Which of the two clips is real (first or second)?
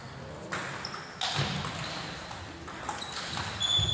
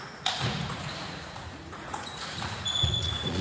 first